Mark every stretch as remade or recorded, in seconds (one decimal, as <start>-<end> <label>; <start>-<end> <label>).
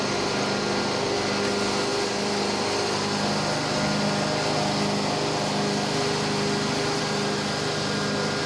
0.0-8.5 recorded